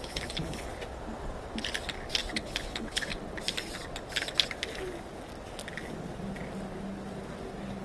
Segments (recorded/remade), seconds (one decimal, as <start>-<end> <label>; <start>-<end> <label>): 0.0-0.7 remade; 0.7-2.3 recorded; 2.3-3.1 remade; 3.1-7.8 recorded